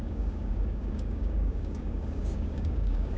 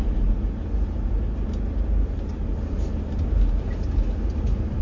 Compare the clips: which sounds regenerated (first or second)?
first